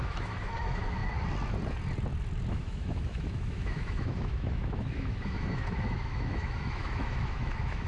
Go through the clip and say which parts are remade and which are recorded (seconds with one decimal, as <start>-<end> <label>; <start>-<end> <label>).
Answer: 0.0-1.0 remade; 1.0-2.5 recorded; 2.5-7.9 remade